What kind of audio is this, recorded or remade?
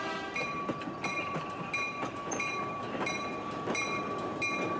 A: remade